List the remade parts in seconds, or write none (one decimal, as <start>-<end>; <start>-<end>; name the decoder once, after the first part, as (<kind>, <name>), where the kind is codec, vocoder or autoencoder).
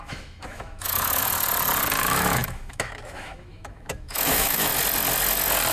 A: 0.0-1.2 (autoencoder, DAC-VAE); 2.0-4.7